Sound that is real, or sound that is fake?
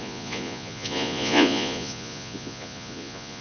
fake